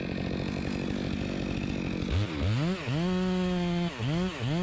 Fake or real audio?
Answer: real